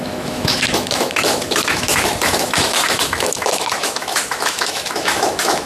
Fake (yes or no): yes